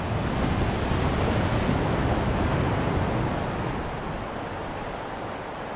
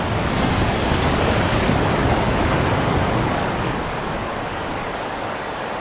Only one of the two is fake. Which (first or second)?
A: second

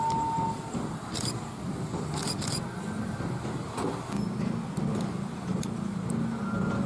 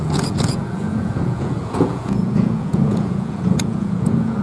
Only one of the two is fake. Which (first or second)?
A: second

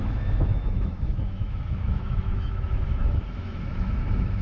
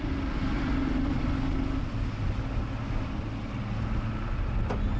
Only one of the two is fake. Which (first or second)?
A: first